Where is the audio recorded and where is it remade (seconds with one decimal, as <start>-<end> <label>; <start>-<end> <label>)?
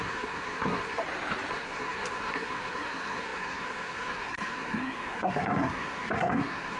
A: 0.0-1.0 remade; 1.0-1.5 recorded; 1.5-6.8 remade